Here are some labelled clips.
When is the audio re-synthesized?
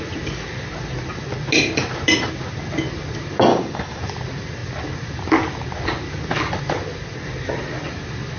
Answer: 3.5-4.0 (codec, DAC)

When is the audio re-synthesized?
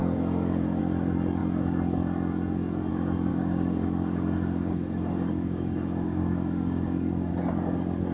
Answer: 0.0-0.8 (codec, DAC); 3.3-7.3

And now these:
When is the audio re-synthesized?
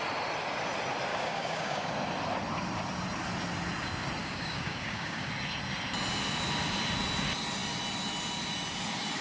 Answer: 1.1-1.9 (codec, DAC); 4.2-5.3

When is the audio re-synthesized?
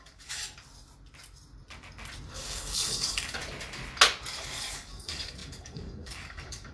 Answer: 0.0-0.4 (codec, DAC); 2.3-3.4; 4.4-6.7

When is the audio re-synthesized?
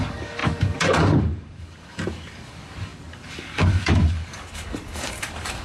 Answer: 0.0-5.6 (codec, DAC)